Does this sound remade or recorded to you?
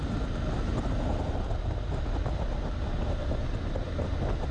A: recorded